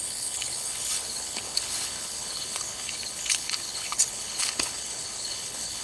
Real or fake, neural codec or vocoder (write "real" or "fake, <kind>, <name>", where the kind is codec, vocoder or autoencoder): fake, codec, HILCodec